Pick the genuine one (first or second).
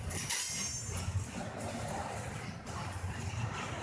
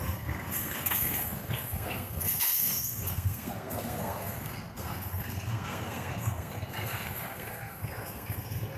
first